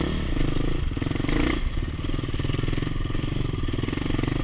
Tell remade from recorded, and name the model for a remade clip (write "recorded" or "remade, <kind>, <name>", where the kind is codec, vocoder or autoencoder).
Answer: recorded